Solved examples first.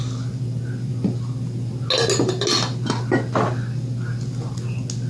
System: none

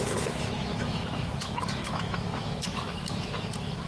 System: autoencoder, DAC-VAE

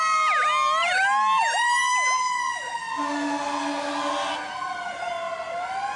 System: none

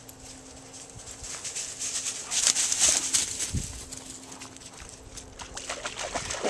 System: none